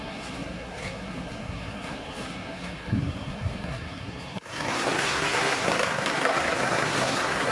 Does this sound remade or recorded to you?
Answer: remade